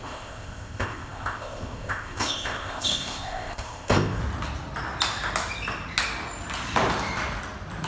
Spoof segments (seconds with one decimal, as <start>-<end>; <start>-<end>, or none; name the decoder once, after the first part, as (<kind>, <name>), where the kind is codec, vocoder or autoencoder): 0.0-4.2 (codec, ZipCodec)